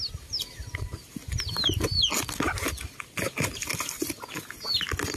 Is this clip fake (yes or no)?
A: no